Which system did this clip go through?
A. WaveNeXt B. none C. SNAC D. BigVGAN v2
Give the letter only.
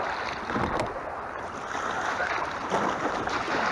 B